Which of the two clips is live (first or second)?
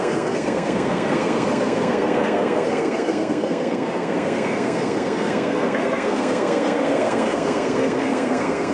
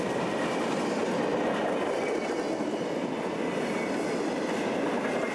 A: second